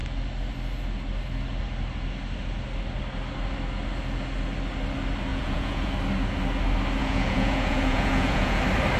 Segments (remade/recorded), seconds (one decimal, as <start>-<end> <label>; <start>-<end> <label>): 0.0-5.3 recorded; 5.3-5.9 remade; 5.9-7.0 recorded; 7.0-8.6 remade; 8.6-9.0 recorded